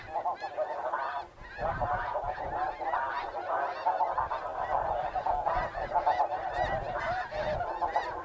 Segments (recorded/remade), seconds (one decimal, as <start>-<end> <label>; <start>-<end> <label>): 0.0-8.2 recorded